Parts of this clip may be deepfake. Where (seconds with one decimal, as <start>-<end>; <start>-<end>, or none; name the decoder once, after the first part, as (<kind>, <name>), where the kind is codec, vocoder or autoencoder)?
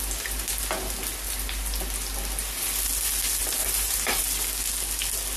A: 3.6-4.2 (vocoder, BigVGAN v2)